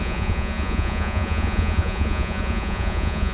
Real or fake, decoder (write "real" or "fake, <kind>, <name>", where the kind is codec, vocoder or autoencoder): fake, vocoder, Vocos